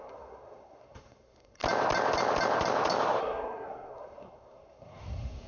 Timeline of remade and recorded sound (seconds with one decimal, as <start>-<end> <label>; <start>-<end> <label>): 0.0-1.6 remade; 1.6-3.2 recorded; 3.2-5.5 remade

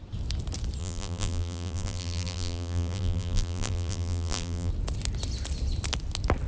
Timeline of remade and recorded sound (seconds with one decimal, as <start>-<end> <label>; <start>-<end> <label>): 0.0-0.8 recorded; 0.8-4.7 remade; 4.7-6.5 recorded

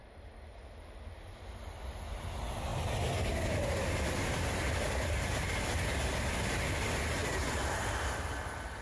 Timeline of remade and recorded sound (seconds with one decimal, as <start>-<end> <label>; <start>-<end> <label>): 0.0-8.8 recorded